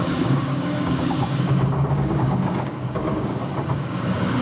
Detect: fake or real fake